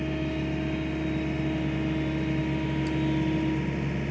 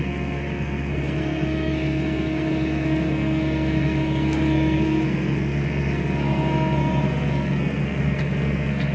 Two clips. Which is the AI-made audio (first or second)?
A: second